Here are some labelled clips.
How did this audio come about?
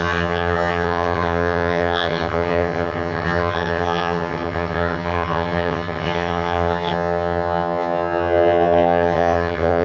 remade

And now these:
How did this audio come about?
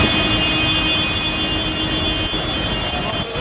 recorded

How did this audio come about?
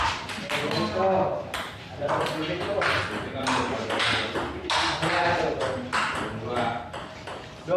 recorded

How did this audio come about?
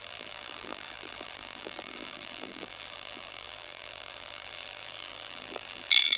remade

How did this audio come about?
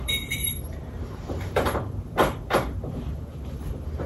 remade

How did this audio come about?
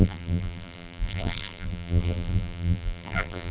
remade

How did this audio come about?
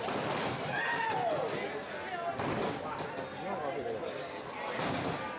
recorded